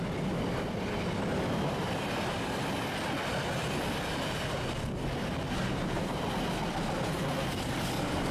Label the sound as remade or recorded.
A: recorded